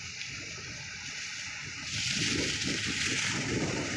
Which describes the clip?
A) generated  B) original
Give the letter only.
B